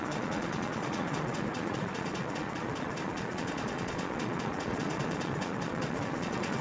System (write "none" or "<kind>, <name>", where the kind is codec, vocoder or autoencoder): vocoder, Vocos